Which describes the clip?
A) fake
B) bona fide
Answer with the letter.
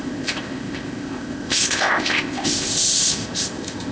A